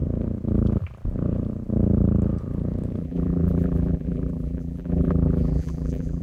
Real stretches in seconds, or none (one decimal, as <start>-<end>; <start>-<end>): 0.0-3.0